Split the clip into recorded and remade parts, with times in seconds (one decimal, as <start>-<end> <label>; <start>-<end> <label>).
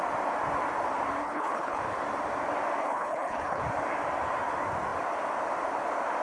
0.0-1.2 recorded; 1.2-1.8 remade; 1.8-2.8 recorded; 2.8-3.6 remade; 3.6-6.2 recorded